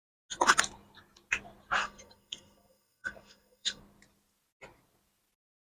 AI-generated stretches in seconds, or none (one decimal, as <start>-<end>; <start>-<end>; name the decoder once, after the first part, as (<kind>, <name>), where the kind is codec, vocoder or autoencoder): 1.8-3.8 (codec, SNAC)